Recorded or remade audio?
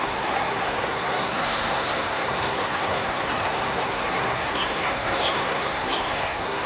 remade